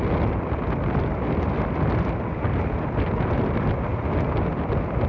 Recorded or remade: recorded